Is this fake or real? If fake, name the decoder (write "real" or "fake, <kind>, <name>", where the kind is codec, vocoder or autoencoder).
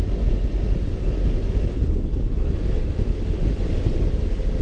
real